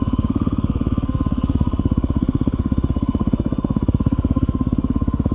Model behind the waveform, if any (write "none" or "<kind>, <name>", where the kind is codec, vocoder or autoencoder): codec, SNAC